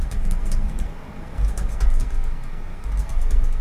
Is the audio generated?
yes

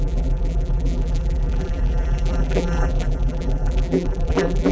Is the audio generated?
yes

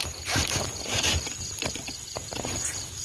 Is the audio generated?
yes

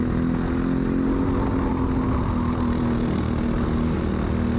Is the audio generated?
no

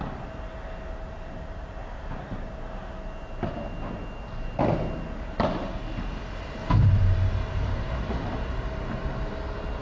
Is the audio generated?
no